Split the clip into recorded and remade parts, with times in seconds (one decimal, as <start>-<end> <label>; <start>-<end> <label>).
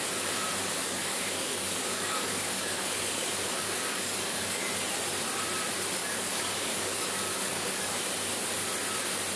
0.0-0.8 recorded; 0.8-4.7 remade; 4.7-6.0 recorded; 6.0-8.0 remade; 8.0-9.4 recorded